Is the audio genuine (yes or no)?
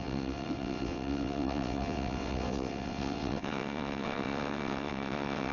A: no